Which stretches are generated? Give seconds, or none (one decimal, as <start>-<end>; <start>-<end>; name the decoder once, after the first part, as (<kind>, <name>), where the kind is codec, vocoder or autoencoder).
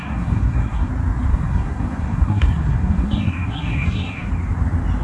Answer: 0.0-0.9 (codec, SNAC); 1.3-4.3